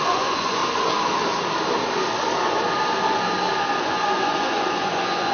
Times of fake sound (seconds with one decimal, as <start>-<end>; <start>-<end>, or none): 0.0-0.6; 3.8-5.3